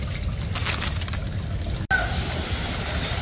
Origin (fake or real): real